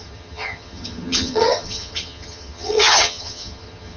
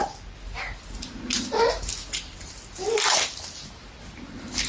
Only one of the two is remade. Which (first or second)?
first